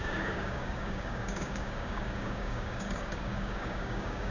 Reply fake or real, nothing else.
fake